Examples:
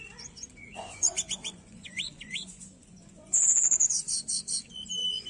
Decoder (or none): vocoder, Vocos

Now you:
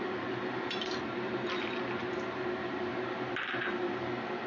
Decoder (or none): none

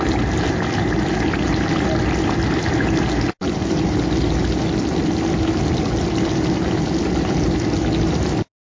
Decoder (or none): none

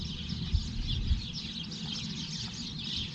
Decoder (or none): none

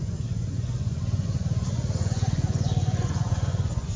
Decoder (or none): vocoder, Vocos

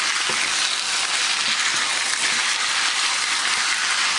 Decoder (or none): none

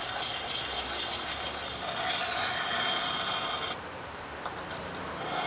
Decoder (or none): none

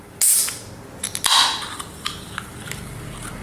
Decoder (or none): none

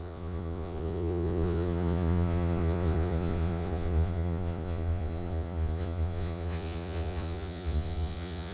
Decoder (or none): vocoder, Vocos